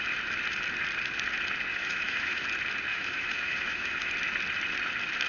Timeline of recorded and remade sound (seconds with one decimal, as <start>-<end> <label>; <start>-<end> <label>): 0.0-1.7 recorded; 1.7-2.4 remade; 2.4-2.9 recorded; 2.9-4.1 remade; 4.1-5.3 recorded